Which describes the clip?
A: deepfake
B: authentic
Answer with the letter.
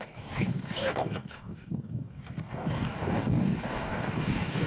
A